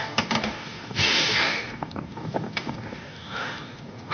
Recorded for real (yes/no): no